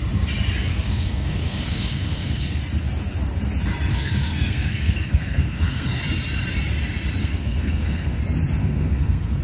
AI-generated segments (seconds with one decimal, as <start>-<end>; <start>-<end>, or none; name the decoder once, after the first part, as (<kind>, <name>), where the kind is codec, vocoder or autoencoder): 0.7-2.6 (codec, SNAC); 3.9-6.0; 7.2-8.2; 8.6-9.4